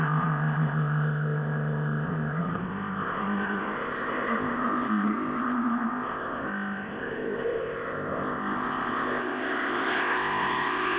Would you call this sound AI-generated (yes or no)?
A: yes